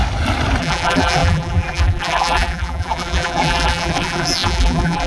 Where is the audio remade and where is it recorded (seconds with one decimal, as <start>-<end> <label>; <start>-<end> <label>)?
0.0-0.6 recorded; 0.6-5.1 remade